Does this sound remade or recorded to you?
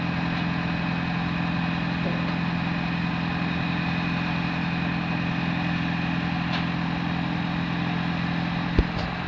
recorded